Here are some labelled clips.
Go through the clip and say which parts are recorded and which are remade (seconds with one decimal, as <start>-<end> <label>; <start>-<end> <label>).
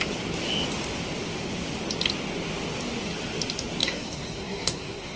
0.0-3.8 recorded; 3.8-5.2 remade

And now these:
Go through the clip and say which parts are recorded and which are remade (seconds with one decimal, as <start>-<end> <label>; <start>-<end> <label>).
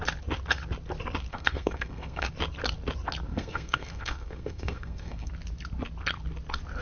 0.0-1.3 recorded; 1.3-2.3 remade; 2.3-3.3 recorded; 3.3-5.3 remade; 5.3-6.8 recorded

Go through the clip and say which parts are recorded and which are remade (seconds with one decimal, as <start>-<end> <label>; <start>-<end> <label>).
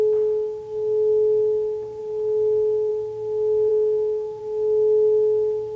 0.0-3.7 recorded; 3.7-4.4 remade; 4.4-5.8 recorded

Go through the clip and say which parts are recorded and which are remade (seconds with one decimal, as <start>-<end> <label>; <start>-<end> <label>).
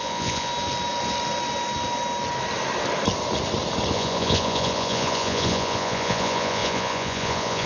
0.0-0.5 remade; 0.5-3.9 recorded; 3.9-7.7 remade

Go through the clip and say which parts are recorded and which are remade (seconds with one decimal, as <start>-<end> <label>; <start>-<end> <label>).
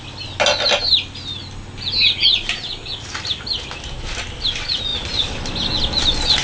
0.0-6.4 recorded